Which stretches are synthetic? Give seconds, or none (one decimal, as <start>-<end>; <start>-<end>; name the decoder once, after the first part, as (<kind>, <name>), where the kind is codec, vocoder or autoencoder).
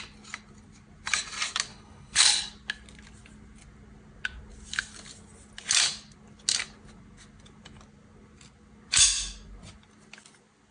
1.7-2.5 (codec, HILCodec)